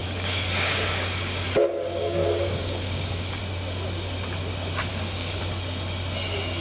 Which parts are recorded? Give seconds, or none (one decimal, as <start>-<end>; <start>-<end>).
3.4-4.9; 5.4-6.6